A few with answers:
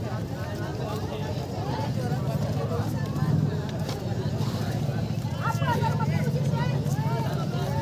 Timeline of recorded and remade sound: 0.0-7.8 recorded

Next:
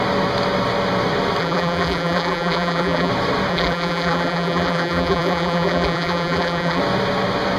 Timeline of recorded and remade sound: 0.0-1.4 recorded; 1.4-3.1 remade; 3.1-3.5 recorded; 3.5-6.8 remade; 6.8-7.6 recorded

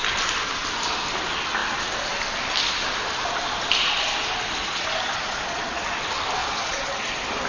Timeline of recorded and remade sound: 0.0-4.6 recorded; 4.6-5.9 remade; 5.9-6.4 recorded; 6.4-7.1 remade; 7.1-7.5 recorded

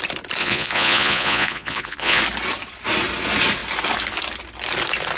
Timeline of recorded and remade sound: 0.0-0.4 recorded; 0.4-2.2 remade; 2.2-5.2 recorded

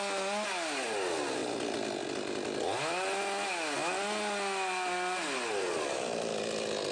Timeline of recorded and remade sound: 0.0-6.9 recorded

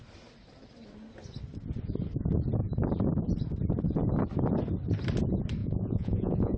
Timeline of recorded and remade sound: 0.0-5.6 recorded; 5.6-6.6 remade

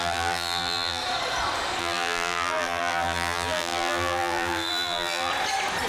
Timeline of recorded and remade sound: 0.0-1.0 remade; 1.0-1.8 recorded; 1.8-5.3 remade; 5.3-5.9 recorded

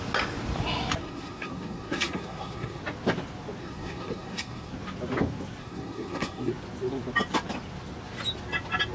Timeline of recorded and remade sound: 0.0-1.0 recorded; 1.0-2.8 remade; 2.8-3.6 recorded; 3.6-4.7 remade; 4.7-5.6 recorded; 5.6-6.5 remade; 6.5-8.9 recorded